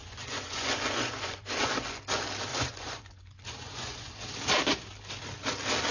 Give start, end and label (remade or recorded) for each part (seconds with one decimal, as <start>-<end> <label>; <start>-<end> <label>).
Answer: 0.0-2.0 remade; 2.0-2.5 recorded; 2.5-4.3 remade; 4.3-5.9 recorded